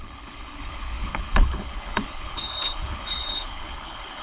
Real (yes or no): no